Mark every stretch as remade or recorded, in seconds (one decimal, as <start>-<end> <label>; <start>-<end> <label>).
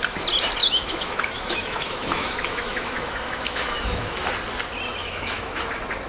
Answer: 0.0-0.6 recorded; 0.6-4.3 remade; 4.3-5.0 recorded; 5.0-5.6 remade; 5.6-6.1 recorded